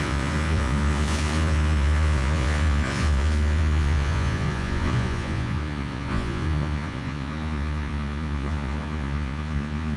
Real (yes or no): no